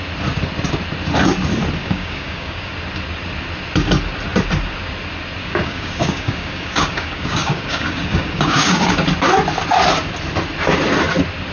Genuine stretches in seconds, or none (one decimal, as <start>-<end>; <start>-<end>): 0.0-1.8; 2.7-5.4; 8.9-11.5